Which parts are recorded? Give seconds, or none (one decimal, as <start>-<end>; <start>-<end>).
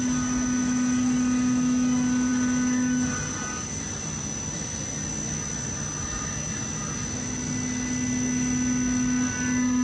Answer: 0.0-9.8